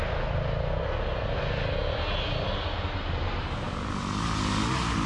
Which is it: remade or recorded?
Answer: recorded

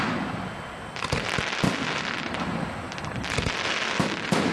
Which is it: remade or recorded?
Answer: recorded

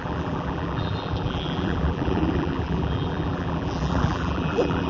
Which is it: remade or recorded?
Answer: remade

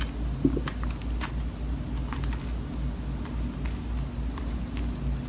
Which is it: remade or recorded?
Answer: recorded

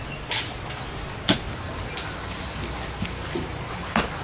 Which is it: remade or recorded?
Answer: recorded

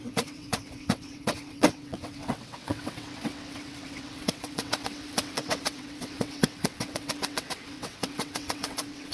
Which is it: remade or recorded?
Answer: remade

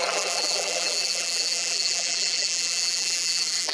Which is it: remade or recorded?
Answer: remade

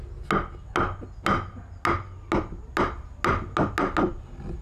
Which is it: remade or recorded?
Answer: recorded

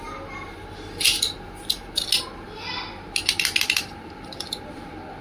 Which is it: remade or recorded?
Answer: recorded